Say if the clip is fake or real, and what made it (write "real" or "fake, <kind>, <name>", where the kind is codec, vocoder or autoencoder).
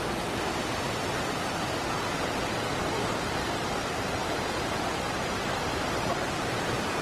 real